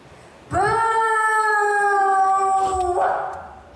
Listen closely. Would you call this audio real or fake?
real